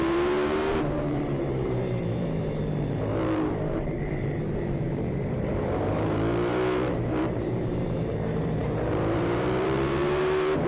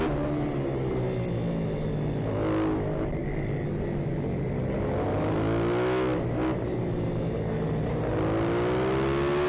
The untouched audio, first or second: second